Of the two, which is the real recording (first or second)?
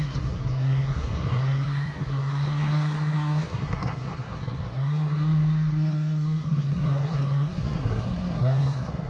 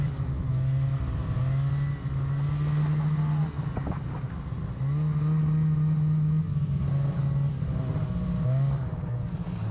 second